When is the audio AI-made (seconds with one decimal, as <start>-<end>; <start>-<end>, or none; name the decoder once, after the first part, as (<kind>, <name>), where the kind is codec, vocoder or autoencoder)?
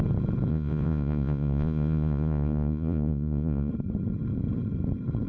0.5-3.7 (vocoder, Vocos)